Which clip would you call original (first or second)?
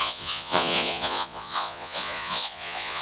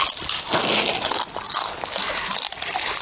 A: second